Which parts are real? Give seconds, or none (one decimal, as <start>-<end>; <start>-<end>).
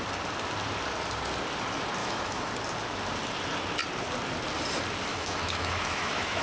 0.0-2.0; 2.5-5.1